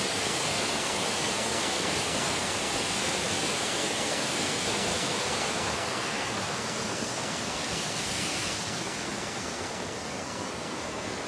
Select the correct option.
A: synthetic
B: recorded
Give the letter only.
A